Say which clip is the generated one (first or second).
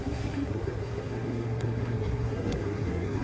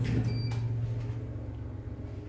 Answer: first